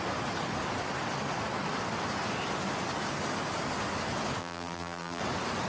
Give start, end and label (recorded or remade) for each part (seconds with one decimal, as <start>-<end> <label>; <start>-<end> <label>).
0.0-4.4 recorded; 4.4-5.2 remade; 5.2-5.7 recorded